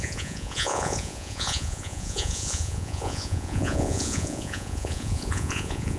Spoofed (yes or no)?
yes